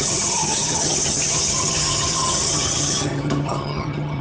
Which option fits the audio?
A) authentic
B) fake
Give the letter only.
B